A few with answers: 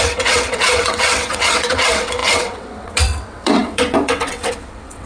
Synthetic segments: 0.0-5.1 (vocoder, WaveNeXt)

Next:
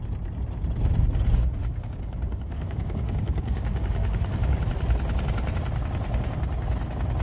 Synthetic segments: 1.6-4.7 (codec, DAC)

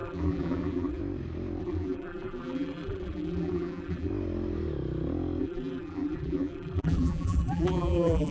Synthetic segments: 0.0-1.0 (vocoder, BigVGAN v2); 1.6-4.1; 5.4-8.3

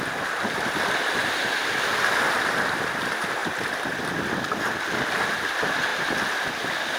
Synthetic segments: 1.2-2.2 (vocoder, BigVGAN v2); 3.4-4.9; 5.9-7.0